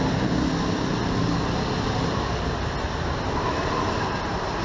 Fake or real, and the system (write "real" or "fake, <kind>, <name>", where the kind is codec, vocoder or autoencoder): real